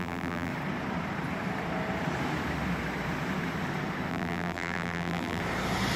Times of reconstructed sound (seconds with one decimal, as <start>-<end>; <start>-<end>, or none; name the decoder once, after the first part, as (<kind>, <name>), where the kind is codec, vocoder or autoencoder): 0.0-0.5 (vocoder, BigVGAN v2); 4.1-5.4